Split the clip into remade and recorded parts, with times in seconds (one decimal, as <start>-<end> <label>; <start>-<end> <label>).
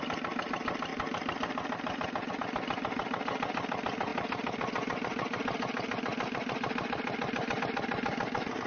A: 0.0-8.7 recorded